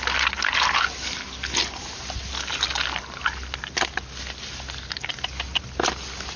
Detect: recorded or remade recorded